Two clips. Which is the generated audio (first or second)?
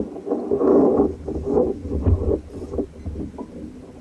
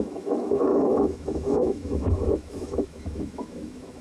second